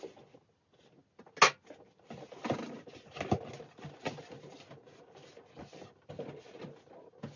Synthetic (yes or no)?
no